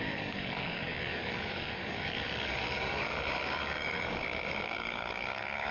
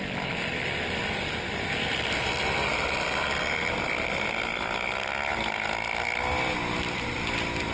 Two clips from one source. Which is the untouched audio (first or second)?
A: second